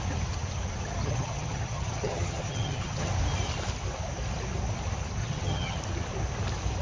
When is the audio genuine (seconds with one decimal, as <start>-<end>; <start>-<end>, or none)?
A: 0.0-1.0; 3.1-5.2; 5.8-6.8

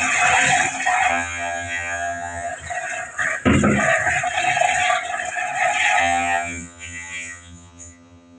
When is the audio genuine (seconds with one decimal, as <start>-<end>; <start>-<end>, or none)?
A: 0.0-1.1; 2.5-6.0

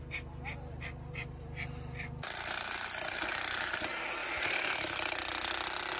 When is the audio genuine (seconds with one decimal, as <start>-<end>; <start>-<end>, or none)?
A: 0.0-6.0

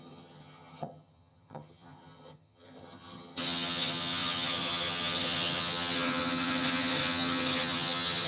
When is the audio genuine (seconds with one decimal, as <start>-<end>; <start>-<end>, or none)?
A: none

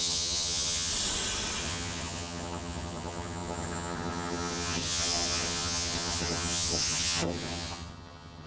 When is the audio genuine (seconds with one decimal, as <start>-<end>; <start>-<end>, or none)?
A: 0.9-1.6

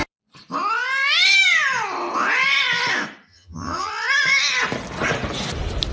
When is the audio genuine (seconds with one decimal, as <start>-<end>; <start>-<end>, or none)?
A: 0.0-3.3; 3.9-5.9